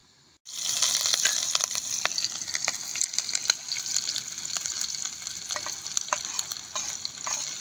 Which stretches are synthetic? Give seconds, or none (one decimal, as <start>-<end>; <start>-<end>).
none